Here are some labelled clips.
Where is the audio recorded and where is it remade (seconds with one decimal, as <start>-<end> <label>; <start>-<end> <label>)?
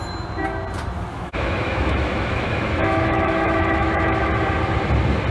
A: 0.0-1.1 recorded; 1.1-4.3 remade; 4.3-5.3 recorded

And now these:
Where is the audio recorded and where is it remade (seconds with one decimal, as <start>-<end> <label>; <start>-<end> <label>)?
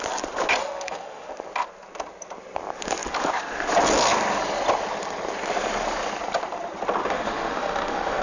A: 0.0-0.6 recorded; 0.6-1.3 remade; 1.3-7.0 recorded; 7.0-8.2 remade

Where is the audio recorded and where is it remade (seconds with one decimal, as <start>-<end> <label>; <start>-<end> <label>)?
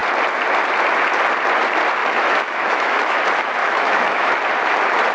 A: 0.0-2.0 recorded; 2.0-3.2 remade; 3.2-3.6 recorded; 3.6-4.3 remade; 4.3-5.1 recorded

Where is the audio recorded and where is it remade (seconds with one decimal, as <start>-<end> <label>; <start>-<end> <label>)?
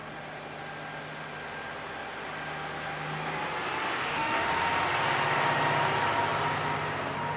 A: 0.0-3.8 recorded; 3.8-4.5 remade; 4.5-7.4 recorded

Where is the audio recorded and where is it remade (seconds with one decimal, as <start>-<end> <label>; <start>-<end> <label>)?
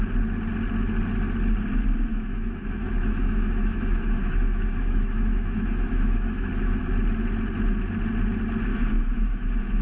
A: 0.0-2.1 recorded; 2.1-6.8 remade; 6.8-8.7 recorded; 8.7-9.8 remade